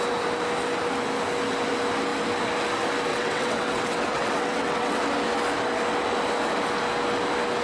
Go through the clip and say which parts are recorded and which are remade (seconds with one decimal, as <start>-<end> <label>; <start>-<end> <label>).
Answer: 0.0-3.1 recorded; 3.1-5.0 remade; 5.0-7.6 recorded